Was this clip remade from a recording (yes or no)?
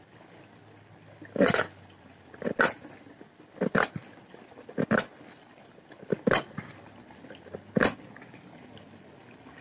no